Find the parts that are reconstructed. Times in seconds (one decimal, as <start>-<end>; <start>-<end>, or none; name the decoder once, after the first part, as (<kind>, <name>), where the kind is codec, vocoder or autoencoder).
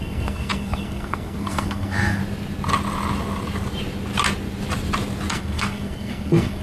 0.0-2.2 (codec, SNAC); 5.3-6.6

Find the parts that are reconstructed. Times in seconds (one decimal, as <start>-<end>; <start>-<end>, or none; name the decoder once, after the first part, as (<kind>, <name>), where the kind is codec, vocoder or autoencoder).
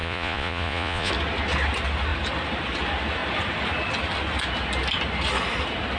0.0-1.1 (vocoder, Vocos)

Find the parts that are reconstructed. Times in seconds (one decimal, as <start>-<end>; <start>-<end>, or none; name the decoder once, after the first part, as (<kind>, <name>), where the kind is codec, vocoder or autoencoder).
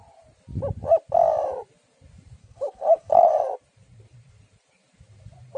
2.4-3.3 (codec, HILCodec)